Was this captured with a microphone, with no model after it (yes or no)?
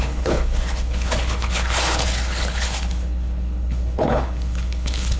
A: no